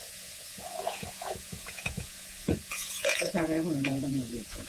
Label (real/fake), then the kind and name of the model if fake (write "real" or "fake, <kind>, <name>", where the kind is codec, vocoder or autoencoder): fake, vocoder, Vocos